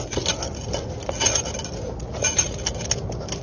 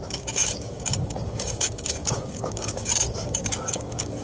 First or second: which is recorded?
first